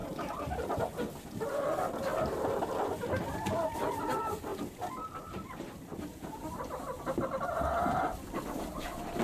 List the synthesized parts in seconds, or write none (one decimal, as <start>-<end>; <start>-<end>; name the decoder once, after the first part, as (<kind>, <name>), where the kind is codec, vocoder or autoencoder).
0.0-0.8 (vocoder, BigVGAN v2); 2.1-2.6